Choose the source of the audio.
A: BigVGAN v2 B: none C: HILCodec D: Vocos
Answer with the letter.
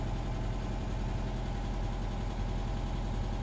B